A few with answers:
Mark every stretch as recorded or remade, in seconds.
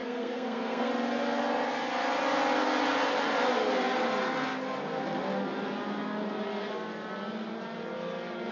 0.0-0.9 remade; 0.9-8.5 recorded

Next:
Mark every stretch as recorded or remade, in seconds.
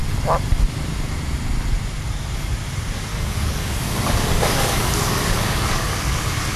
0.0-3.1 recorded; 3.1-6.6 remade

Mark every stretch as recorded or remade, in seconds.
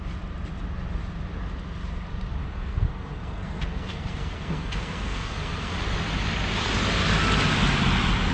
0.0-2.4 recorded; 2.4-5.7 remade; 5.7-8.3 recorded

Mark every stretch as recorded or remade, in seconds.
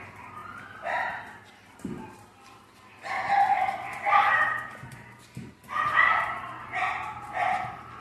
0.0-8.0 recorded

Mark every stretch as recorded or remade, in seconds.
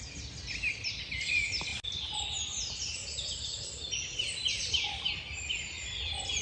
0.0-6.4 recorded